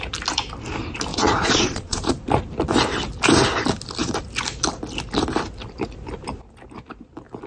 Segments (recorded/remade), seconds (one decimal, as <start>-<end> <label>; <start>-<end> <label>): 0.0-1.1 recorded; 1.1-2.1 remade; 2.1-7.5 recorded